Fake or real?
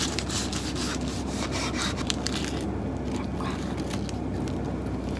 real